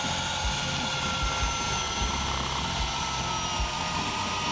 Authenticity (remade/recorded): recorded